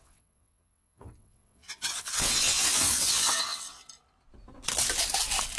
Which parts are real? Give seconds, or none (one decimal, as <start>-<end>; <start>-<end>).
3.8-5.6